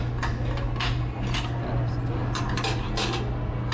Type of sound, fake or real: real